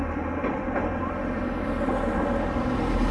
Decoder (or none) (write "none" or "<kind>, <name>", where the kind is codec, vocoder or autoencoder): none